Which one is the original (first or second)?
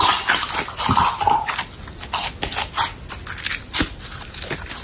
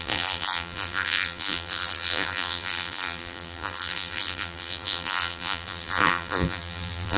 first